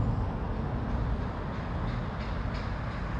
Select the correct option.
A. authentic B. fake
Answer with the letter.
A